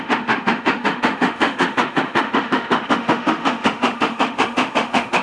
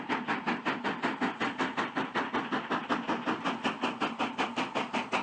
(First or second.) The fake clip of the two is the first